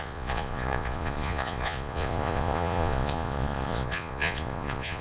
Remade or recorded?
remade